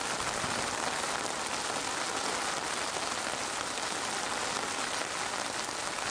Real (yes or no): yes